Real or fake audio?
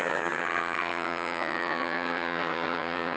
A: fake